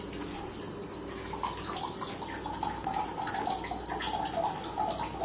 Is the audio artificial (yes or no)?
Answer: no